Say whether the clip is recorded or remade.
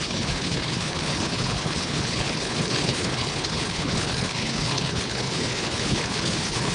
remade